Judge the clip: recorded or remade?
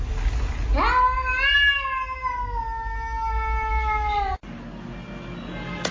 recorded